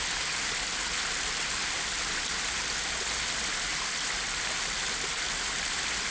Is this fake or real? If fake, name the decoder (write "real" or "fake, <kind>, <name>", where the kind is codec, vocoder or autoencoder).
real